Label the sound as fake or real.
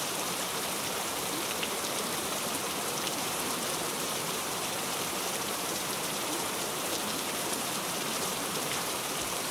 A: fake